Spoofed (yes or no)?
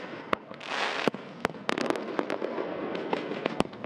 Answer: yes